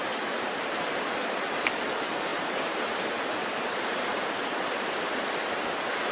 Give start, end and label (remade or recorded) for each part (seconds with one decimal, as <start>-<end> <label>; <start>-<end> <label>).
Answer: 0.0-1.2 recorded; 1.2-1.8 remade; 1.8-2.3 recorded; 2.3-5.0 remade; 5.0-6.1 recorded